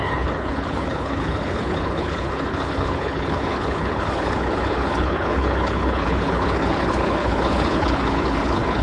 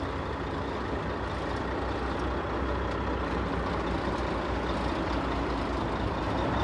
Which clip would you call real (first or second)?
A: second